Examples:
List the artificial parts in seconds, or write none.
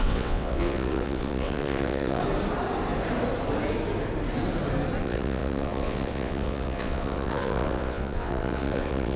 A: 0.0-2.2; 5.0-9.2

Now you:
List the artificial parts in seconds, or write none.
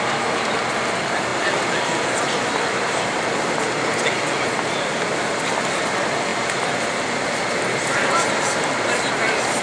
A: none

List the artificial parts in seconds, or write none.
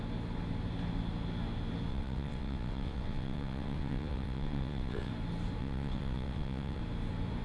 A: 1.9-5.1; 5.6-6.8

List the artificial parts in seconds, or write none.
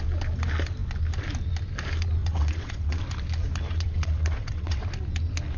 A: 2.2-3.0; 3.7-4.8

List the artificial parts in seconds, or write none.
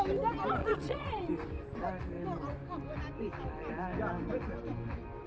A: 0.6-1.3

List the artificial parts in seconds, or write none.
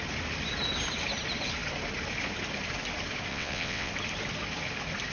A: 3.3-3.9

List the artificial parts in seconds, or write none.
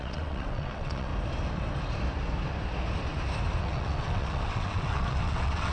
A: 0.0-1.1; 3.6-5.7